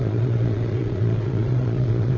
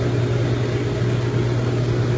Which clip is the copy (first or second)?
first